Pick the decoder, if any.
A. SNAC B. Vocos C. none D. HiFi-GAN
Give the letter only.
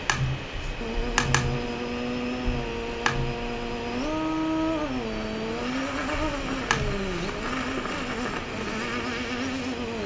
C